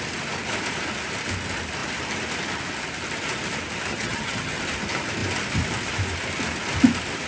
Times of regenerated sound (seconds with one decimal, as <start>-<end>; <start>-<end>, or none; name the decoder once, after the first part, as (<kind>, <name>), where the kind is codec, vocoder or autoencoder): 3.9-4.6 (vocoder, HiFi-GAN)